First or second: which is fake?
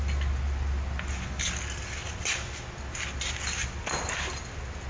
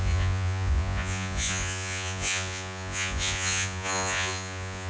second